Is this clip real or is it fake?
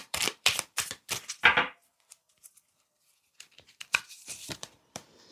fake